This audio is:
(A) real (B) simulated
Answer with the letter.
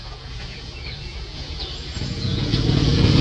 B